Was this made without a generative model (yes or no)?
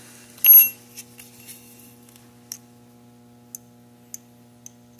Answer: yes